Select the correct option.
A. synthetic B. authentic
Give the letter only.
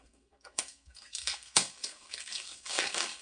A